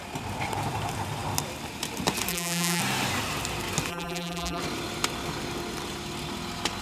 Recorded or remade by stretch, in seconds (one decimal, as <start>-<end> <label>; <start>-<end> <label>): 0.0-2.3 recorded; 2.3-2.8 remade; 2.8-3.9 recorded; 3.9-4.6 remade; 4.6-6.8 recorded